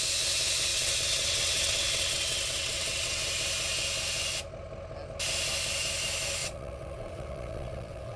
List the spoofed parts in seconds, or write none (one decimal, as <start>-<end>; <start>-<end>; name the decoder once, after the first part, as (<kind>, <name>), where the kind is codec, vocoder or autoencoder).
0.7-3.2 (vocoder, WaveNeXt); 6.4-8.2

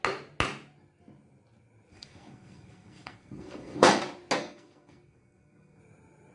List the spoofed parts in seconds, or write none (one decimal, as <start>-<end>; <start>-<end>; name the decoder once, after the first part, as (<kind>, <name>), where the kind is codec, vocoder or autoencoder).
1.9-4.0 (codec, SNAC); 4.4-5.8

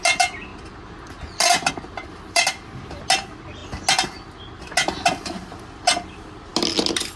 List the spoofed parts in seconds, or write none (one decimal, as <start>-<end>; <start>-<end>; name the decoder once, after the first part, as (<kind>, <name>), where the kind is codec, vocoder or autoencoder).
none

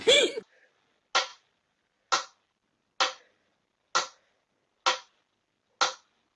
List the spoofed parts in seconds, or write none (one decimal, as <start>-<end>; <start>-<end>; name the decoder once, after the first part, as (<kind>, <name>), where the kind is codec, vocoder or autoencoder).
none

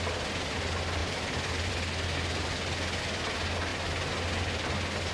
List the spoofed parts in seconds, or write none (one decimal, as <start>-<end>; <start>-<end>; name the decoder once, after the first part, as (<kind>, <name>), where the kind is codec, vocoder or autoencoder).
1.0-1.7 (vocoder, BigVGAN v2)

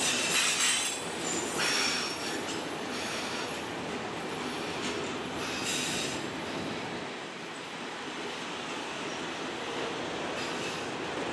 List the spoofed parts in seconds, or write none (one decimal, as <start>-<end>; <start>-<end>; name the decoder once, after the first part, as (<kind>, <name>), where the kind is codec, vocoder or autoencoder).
none